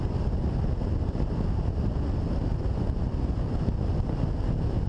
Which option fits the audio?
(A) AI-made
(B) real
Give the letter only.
B